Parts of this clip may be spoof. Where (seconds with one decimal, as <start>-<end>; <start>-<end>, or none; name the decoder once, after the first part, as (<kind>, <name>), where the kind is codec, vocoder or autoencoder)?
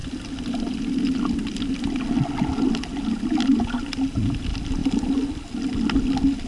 none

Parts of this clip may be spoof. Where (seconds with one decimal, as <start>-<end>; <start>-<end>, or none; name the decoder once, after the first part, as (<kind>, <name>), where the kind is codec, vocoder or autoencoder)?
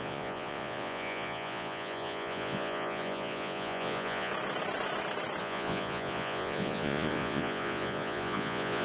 0.0-4.3 (vocoder, Vocos); 5.4-8.8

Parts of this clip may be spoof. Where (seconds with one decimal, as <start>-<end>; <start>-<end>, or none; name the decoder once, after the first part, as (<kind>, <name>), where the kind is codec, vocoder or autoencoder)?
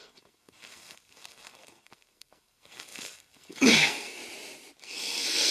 0.0-4.2 (codec, SNAC); 4.8-5.5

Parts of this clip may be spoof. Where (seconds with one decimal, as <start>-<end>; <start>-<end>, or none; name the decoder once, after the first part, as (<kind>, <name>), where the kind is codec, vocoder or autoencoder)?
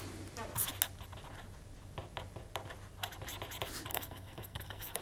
3.9-5.0 (codec, SNAC)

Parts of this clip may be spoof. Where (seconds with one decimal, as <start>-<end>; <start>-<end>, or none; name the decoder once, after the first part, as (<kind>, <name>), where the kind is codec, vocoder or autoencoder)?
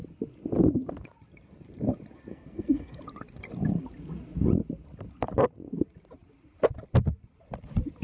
2.3-3.0 (codec, SNAC)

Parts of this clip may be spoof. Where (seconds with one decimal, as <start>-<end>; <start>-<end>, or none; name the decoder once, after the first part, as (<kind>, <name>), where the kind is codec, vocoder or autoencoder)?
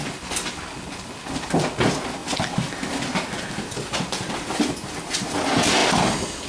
none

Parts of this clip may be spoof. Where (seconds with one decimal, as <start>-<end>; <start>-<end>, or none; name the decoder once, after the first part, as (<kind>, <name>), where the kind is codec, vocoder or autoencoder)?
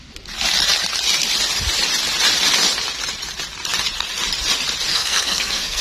4.9-5.8 (codec, SNAC)